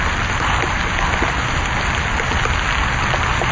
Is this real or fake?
real